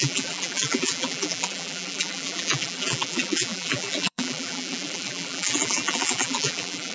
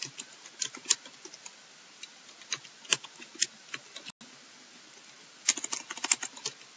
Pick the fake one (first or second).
first